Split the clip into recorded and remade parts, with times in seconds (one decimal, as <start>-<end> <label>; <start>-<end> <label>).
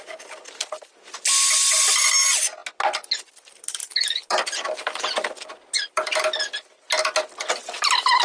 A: 0.0-8.2 recorded